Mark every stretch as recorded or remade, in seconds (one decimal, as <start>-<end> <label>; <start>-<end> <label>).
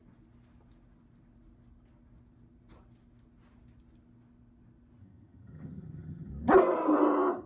0.0-5.0 recorded; 5.0-6.3 remade; 6.3-7.5 recorded